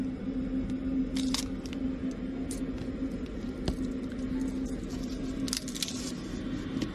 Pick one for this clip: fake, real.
real